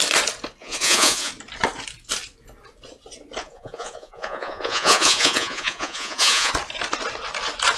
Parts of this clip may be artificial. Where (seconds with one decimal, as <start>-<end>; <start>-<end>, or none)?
0.6-1.3; 3.4-6.5